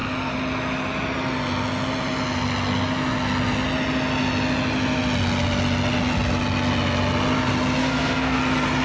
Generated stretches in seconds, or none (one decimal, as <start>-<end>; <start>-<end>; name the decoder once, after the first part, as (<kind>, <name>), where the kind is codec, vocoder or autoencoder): 7.8-8.4 (codec, SNAC)